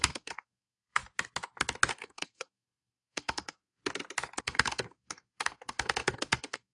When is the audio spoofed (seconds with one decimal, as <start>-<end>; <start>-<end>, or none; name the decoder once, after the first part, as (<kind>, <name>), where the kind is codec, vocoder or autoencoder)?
0.0-1.0 (codec, SNAC); 1.9-3.8; 4.4-6.7